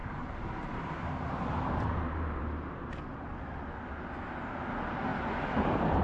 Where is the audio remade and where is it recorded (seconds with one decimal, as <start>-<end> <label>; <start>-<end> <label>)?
0.0-2.4 remade; 2.4-5.1 recorded; 5.1-6.0 remade